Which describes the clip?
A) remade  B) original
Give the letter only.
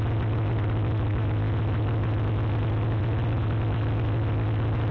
B